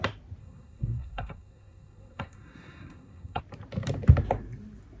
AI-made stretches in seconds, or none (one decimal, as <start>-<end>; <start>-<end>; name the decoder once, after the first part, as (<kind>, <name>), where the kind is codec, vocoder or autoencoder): 0.4-3.4 (codec, SNAC)